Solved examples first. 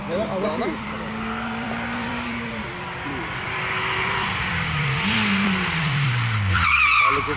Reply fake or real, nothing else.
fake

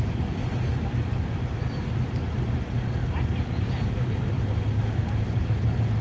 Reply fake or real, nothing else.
real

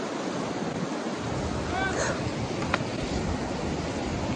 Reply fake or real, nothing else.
real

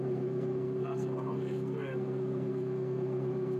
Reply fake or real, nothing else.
fake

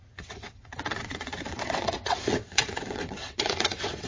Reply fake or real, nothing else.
fake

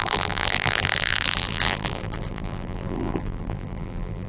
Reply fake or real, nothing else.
fake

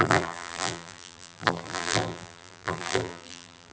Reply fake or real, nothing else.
fake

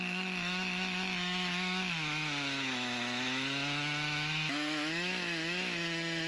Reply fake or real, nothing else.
fake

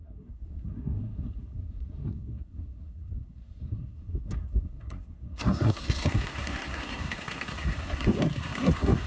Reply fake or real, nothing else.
fake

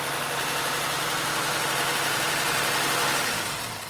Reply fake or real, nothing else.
real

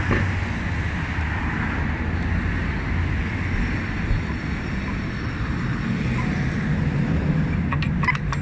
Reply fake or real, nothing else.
real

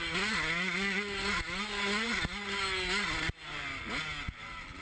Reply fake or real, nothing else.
real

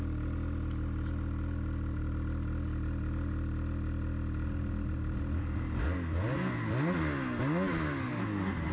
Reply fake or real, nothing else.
real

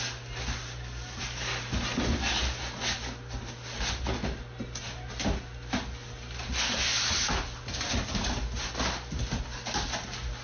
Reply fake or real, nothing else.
real